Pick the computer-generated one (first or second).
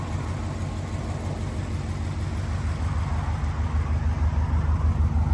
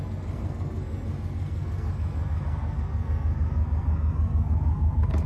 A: second